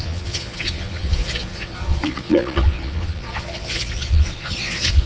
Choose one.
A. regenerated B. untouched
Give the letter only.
A